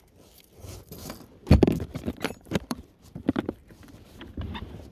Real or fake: fake